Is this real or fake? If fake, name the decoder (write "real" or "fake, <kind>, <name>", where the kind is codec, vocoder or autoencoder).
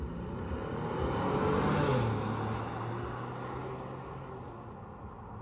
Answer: real